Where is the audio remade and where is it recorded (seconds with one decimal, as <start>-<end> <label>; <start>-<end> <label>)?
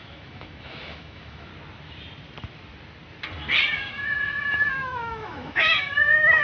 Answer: 0.0-1.5 remade; 1.5-3.7 recorded; 3.7-6.4 remade